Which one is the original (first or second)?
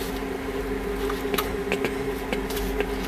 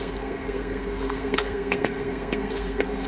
first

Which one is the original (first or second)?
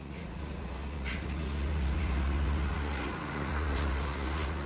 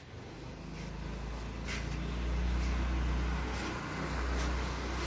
second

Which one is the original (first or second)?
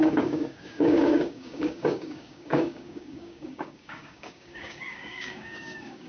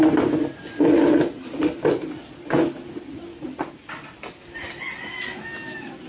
second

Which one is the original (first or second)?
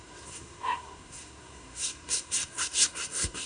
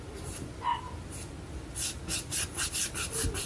second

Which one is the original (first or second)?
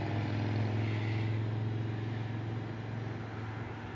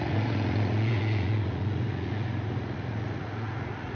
first